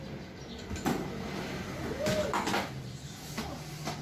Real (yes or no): yes